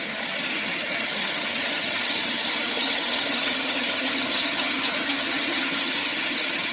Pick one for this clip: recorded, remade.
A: remade